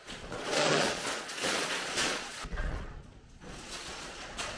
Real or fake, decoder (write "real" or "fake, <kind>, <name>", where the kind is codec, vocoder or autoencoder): fake, vocoder, Vocos